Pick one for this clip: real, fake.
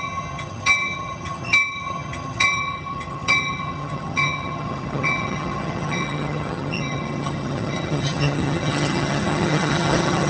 fake